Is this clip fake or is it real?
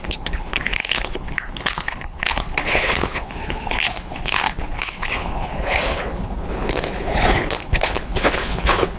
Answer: fake